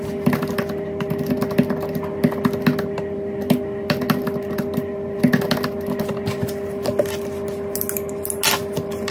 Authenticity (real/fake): real